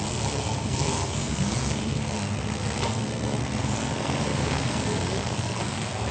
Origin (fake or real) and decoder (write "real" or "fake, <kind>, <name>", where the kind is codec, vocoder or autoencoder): fake, codec, SNAC